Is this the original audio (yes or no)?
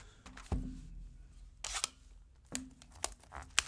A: yes